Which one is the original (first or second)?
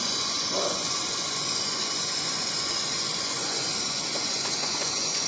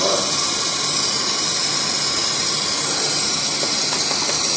second